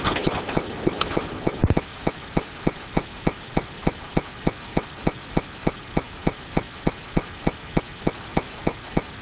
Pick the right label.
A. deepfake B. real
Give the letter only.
B